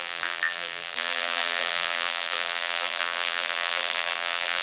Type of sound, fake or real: fake